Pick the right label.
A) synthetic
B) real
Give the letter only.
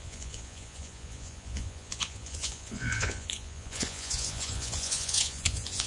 A